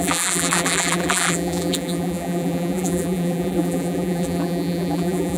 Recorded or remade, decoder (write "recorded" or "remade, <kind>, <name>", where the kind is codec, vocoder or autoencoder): remade, vocoder, BigVGAN v2